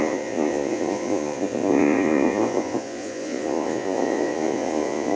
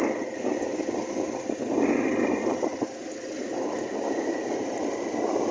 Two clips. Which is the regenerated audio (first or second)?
first